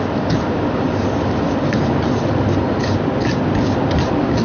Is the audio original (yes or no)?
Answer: yes